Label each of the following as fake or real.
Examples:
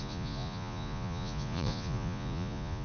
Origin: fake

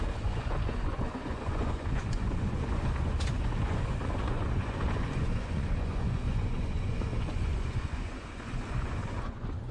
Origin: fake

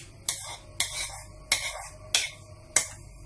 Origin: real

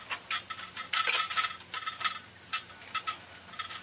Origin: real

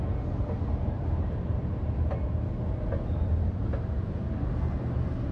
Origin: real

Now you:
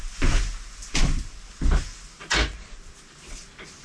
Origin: real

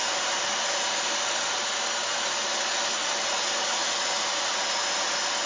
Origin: real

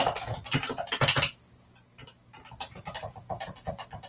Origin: real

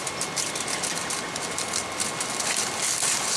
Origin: real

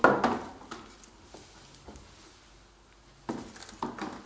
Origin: real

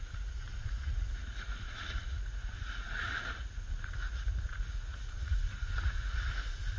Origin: fake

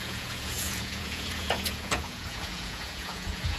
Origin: fake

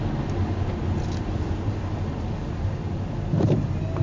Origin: real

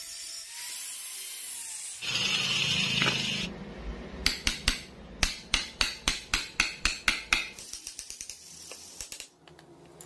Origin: real